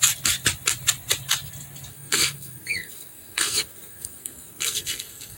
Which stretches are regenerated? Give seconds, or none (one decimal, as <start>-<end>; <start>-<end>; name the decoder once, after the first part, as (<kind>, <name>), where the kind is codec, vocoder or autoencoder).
1.9-5.4 (codec, SNAC)